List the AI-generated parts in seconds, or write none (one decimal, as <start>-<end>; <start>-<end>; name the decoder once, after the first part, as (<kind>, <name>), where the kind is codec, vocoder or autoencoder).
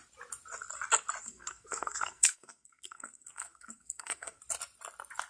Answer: 1.2-4.4 (codec, SNAC)